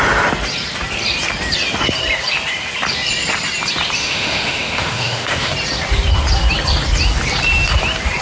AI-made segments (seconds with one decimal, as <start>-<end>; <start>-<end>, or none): 4.0-5.5